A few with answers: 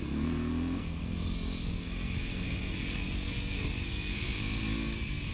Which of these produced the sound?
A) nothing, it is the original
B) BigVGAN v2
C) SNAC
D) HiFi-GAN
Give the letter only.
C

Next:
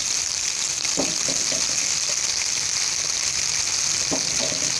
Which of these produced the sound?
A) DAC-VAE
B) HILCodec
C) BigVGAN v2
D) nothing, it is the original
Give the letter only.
D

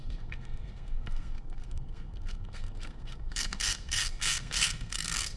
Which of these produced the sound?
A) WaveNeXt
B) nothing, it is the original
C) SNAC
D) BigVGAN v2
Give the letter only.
C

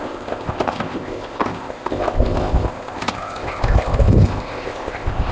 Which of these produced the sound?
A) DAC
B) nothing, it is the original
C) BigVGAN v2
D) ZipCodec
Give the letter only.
D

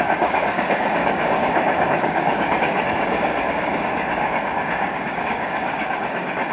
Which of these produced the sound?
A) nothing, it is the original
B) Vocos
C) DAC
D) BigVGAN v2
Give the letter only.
C